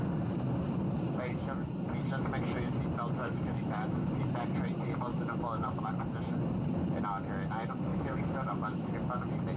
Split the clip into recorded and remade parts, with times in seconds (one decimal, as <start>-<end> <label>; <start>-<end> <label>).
0.0-3.2 recorded; 3.2-4.1 remade; 4.1-5.1 recorded; 5.1-5.8 remade; 5.8-7.9 recorded; 7.9-8.9 remade; 8.9-9.6 recorded